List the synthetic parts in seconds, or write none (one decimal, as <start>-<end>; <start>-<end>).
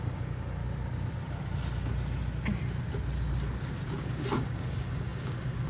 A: 0.0-0.6; 4.0-5.7